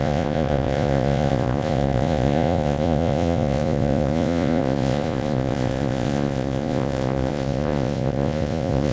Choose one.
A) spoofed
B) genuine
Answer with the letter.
A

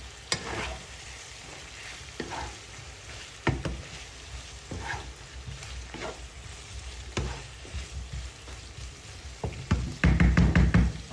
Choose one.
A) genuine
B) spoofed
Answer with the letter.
A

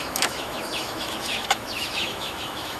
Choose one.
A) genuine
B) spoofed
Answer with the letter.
B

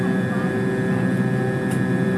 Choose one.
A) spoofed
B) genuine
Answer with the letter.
B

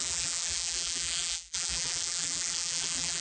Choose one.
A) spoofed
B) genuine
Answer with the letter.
A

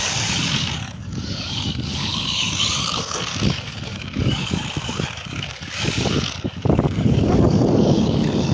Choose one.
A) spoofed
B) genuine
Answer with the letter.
A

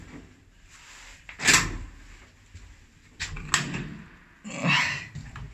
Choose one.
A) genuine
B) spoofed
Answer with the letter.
A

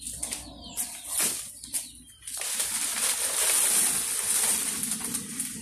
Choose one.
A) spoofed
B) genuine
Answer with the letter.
B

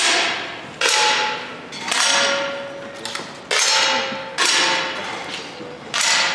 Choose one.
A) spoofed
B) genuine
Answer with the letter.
B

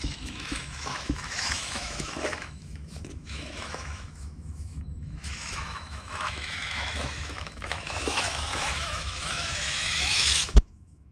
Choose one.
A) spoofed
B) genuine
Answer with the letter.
A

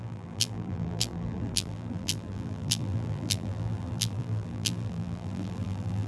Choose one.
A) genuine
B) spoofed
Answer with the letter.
B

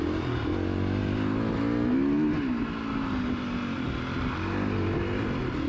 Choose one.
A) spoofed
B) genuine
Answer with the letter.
B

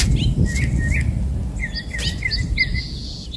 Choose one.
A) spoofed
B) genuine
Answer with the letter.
B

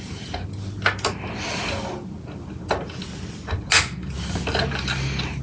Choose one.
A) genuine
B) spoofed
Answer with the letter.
A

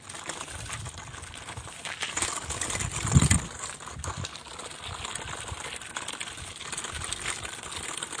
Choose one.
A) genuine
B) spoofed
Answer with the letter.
A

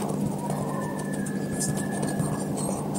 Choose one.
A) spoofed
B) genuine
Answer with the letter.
B